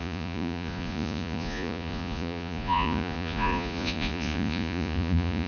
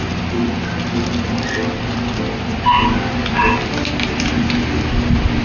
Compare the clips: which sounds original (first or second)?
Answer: second